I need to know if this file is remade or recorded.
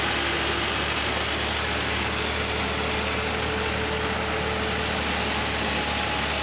recorded